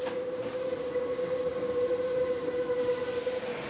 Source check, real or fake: real